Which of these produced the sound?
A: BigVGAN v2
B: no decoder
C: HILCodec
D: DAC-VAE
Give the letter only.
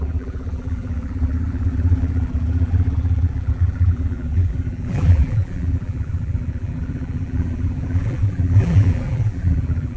A